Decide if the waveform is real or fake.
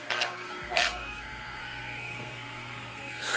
fake